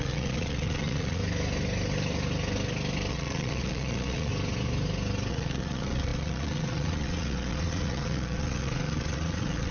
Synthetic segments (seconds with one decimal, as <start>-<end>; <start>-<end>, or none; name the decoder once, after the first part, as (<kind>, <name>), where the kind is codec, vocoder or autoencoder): 0.0-1.2 (vocoder, Vocos); 3.1-4.3; 5.3-9.7